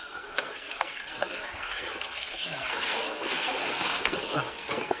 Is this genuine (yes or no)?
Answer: no